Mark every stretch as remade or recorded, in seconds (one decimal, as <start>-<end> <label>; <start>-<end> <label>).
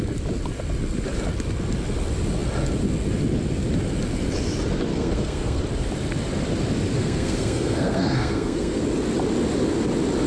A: 0.0-4.9 recorded; 4.9-5.6 remade; 5.6-7.0 recorded; 7.0-8.8 remade; 8.8-10.3 recorded